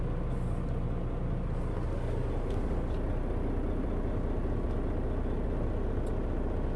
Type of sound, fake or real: real